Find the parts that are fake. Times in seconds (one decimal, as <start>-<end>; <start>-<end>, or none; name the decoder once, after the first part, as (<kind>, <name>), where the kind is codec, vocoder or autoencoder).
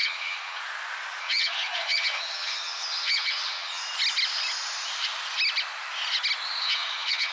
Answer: 0.0-0.6 (vocoder, HiFi-GAN); 1.2-3.8; 6.6-7.3